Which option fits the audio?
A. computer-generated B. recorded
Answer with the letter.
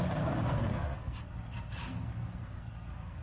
A